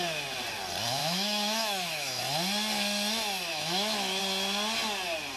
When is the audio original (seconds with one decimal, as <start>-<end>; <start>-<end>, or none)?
0.0-1.0; 2.2-3.5; 4.2-5.4